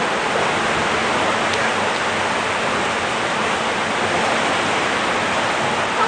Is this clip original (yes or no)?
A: yes